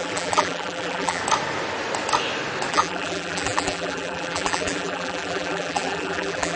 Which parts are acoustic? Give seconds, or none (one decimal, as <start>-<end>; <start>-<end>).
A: 1.2-2.7